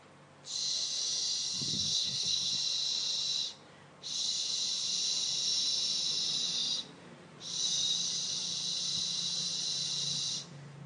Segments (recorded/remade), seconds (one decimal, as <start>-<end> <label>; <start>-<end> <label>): 0.0-1.7 recorded; 1.7-2.5 remade; 2.5-10.9 recorded